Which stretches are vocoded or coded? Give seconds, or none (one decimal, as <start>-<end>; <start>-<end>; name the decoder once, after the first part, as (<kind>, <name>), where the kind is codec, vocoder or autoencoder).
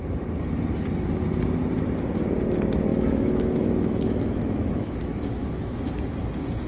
2.9-5.8 (autoencoder, DAC-VAE)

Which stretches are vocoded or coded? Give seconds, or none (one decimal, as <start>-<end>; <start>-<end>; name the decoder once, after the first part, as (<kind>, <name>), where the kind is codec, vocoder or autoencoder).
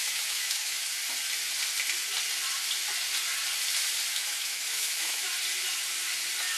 0.0-0.9 (autoencoder, DAC-VAE); 4.1-5.3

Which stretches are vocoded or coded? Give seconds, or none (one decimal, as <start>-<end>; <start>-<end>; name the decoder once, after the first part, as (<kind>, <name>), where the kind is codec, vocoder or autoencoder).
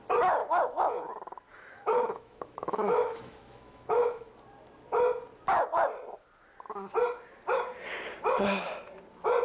0.4-1.0 (autoencoder, DAC-VAE); 1.5-4.3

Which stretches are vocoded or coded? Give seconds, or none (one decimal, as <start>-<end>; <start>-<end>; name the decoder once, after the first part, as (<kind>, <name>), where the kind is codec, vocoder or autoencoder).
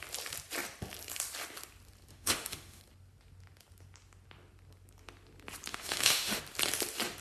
2.1-2.8 (autoencoder, DAC-VAE); 5.7-6.4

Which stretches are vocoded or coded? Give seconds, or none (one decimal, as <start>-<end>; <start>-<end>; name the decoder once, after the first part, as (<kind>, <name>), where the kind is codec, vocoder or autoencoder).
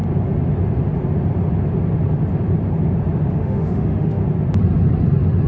3.3-4.2 (autoencoder, DAC-VAE)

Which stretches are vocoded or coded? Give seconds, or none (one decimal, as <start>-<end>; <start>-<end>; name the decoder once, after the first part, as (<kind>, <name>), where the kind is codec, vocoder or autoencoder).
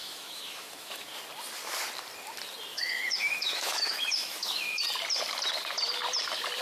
0.0-1.1 (autoencoder, DAC-VAE); 2.7-4.8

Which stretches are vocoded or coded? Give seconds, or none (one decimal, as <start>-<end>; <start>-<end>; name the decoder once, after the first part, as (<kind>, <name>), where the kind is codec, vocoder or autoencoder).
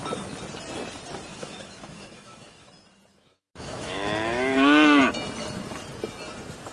1.3-2.7 (autoencoder, DAC-VAE); 3.1-5.0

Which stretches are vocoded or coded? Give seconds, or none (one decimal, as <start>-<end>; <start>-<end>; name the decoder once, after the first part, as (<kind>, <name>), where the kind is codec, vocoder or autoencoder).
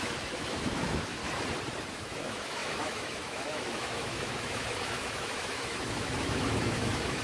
0.0-1.2 (autoencoder, DAC-VAE); 1.9-7.2